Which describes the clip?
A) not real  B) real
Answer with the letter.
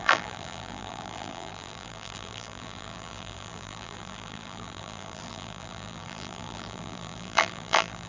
A